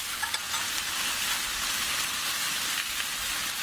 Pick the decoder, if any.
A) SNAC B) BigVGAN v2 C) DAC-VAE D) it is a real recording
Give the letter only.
D